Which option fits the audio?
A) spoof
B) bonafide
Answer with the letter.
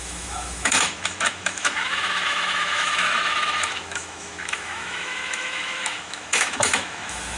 A